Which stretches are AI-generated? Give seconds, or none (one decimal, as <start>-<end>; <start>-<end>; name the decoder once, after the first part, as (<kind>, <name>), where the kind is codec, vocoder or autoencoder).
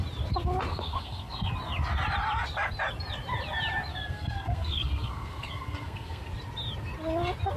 0.7-1.5 (codec, SNAC); 3.9-6.3